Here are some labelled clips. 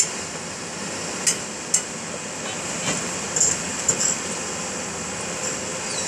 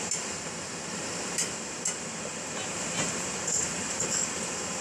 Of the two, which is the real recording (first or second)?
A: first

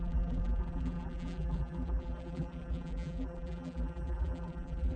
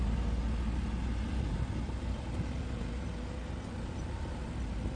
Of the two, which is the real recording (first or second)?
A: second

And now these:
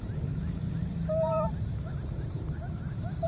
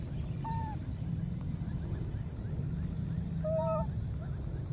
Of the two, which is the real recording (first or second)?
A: second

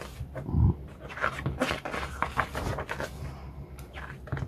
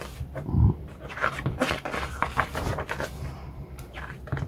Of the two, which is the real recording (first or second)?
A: first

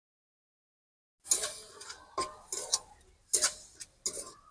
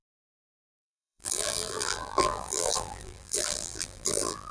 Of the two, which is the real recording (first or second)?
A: first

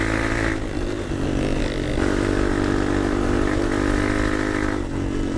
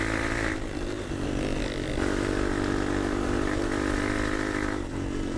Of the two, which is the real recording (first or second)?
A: first